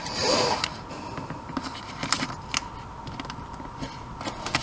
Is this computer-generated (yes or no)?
no